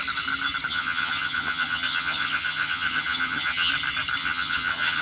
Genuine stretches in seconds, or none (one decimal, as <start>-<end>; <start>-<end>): 0.0-0.7; 3.7-4.2